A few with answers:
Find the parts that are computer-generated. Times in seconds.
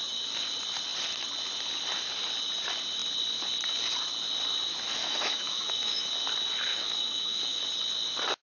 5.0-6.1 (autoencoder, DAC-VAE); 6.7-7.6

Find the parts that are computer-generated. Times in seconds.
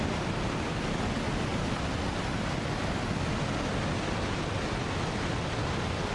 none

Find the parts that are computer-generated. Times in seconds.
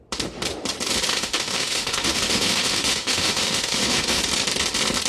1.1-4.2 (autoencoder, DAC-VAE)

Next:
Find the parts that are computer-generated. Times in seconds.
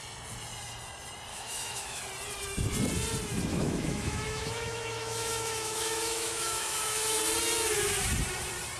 1.3-2.0 (autoencoder, DAC-VAE); 3.5-7.2